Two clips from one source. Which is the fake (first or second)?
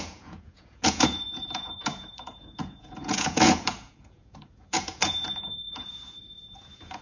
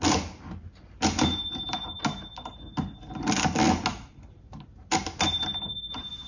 first